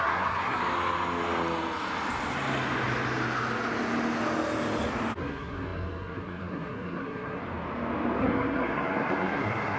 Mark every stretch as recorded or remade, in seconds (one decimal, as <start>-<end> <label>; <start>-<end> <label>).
0.0-0.6 remade; 0.6-5.2 recorded; 5.2-7.4 remade; 7.4-8.2 recorded; 8.2-9.8 remade